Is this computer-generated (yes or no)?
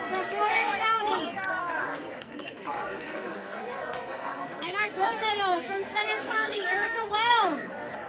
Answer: yes